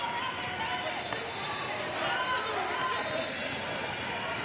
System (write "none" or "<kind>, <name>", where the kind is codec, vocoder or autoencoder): none